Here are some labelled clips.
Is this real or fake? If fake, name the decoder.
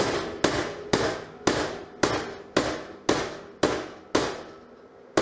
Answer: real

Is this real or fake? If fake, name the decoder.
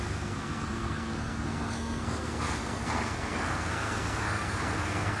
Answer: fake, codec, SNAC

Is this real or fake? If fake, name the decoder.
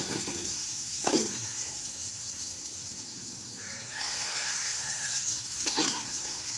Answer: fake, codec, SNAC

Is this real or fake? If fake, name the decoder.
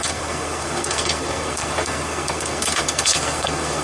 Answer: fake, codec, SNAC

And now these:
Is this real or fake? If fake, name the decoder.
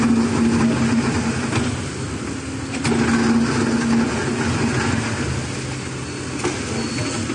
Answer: real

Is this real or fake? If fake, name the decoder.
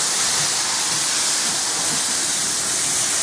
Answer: real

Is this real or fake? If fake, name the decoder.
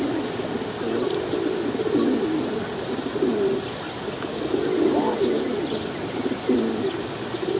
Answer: real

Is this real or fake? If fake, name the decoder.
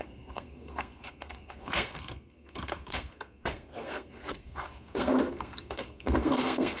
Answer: fake, codec, SNAC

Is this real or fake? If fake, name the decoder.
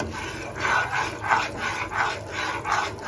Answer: real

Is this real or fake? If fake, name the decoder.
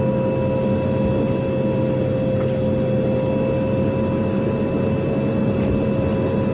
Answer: real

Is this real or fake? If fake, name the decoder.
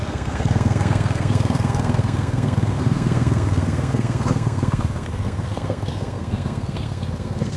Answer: fake, codec, SNAC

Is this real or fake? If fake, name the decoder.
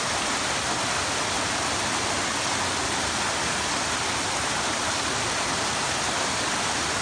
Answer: real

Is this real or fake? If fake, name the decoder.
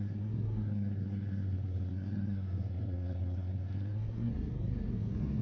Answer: fake, codec, SNAC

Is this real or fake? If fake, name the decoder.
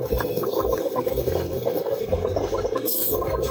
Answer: fake, codec, SNAC